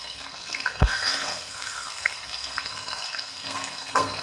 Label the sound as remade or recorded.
remade